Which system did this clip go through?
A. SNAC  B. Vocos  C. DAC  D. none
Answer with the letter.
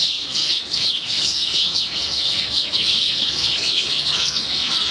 A